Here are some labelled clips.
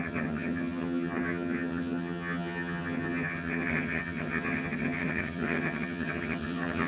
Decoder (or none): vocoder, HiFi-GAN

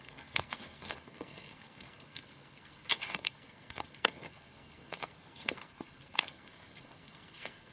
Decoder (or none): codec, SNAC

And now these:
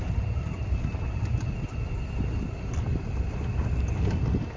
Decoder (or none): none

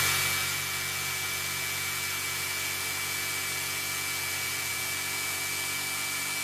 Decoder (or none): vocoder, Vocos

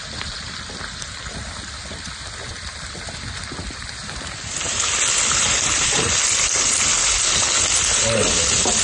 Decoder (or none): vocoder, BigVGAN v2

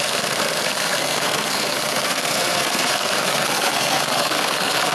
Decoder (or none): codec, SNAC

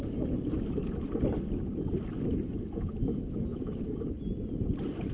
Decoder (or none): none